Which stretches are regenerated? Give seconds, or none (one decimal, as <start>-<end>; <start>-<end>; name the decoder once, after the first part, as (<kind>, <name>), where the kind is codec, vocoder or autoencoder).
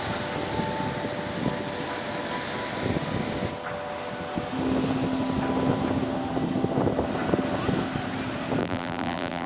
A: 8.6-9.5 (vocoder, BigVGAN v2)